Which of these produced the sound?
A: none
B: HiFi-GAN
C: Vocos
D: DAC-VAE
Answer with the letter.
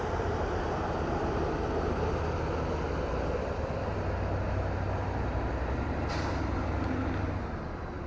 A